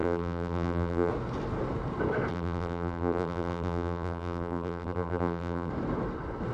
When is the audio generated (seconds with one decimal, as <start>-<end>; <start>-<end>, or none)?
0.0-1.1; 2.3-5.7